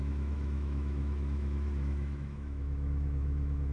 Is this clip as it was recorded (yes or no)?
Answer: no